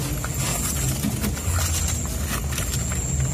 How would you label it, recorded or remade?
recorded